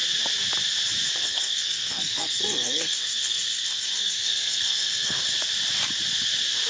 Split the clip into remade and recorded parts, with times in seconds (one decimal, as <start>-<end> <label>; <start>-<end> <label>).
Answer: 0.0-1.2 recorded; 1.2-5.2 remade; 5.2-6.7 recorded